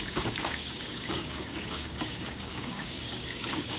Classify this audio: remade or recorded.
remade